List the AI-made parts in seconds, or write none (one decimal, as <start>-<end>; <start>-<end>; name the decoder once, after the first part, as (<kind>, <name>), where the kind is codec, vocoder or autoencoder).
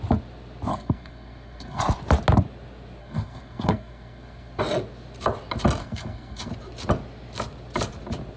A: 0.7-1.8 (codec, SNAC); 3.0-4.6; 5.8-6.5